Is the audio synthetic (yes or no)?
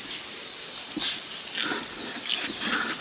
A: no